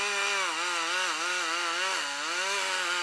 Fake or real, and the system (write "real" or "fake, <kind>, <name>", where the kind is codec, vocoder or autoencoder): real